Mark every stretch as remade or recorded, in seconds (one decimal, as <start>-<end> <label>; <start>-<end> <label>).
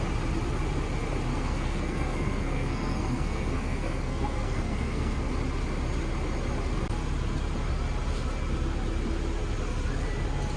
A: 0.0-1.3 recorded; 1.3-5.3 remade; 5.3-10.6 recorded